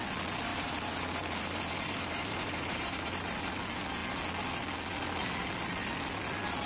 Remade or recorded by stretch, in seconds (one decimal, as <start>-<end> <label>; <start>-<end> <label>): 0.0-0.5 recorded; 0.5-3.6 remade; 3.6-6.7 recorded